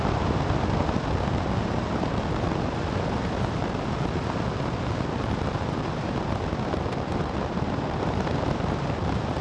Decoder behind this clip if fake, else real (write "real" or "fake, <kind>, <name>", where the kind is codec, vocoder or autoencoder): real